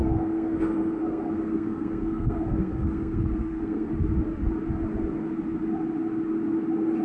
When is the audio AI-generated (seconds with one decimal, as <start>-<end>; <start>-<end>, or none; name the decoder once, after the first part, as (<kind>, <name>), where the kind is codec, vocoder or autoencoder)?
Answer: 0.0-3.9 (codec, SNAC)